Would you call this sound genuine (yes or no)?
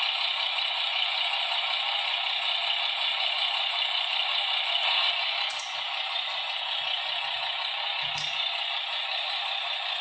yes